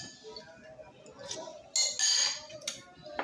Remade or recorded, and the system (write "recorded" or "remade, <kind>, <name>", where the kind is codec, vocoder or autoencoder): recorded